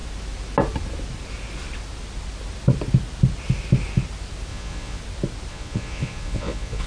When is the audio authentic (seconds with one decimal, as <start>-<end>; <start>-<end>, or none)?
0.0-4.5; 5.0-5.5